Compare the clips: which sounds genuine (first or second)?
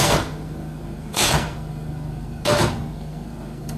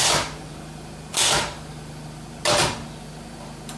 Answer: second